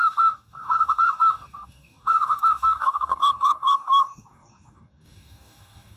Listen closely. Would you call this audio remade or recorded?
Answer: remade